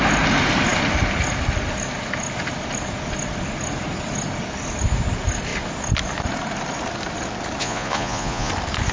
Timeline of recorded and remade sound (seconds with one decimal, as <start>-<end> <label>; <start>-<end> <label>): 0.0-7.6 recorded; 7.6-8.5 remade; 8.5-8.9 recorded